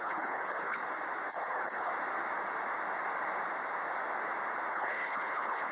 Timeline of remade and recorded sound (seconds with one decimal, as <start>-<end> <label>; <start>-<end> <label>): 0.0-0.8 remade; 0.8-1.3 recorded; 1.3-1.9 remade; 1.9-4.7 recorded; 4.7-5.7 remade